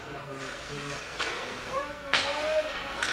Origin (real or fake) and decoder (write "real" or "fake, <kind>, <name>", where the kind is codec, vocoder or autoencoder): fake, codec, SNAC